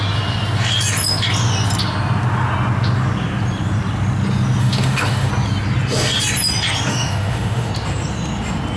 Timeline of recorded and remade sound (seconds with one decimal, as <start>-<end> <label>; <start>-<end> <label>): 0.0-4.6 recorded; 4.6-5.3 remade; 5.3-6.9 recorded; 6.9-7.7 remade; 7.7-8.8 recorded